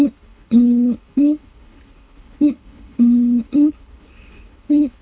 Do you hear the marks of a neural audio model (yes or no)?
yes